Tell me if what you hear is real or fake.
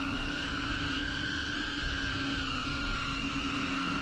fake